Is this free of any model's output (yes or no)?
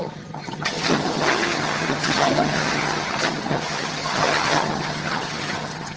no